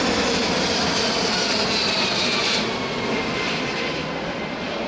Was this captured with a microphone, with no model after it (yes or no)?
yes